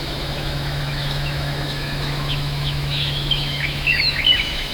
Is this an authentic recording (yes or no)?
no